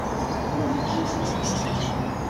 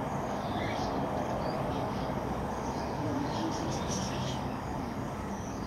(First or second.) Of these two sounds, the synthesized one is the second